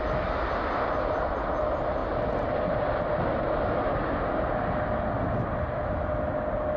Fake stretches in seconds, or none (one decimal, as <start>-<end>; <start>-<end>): none